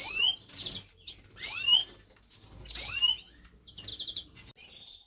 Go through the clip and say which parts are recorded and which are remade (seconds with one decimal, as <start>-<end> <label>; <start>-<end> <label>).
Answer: 0.0-5.1 recorded